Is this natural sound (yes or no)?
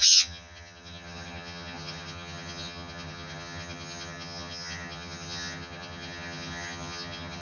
no